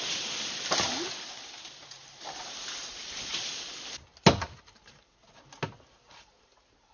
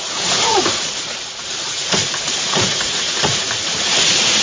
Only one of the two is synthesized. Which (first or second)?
second